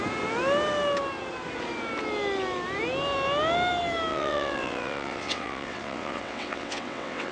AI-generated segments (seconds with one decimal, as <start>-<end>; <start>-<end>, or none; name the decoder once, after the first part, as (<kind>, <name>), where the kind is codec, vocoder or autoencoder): 4.1-7.3 (vocoder, WaveNeXt)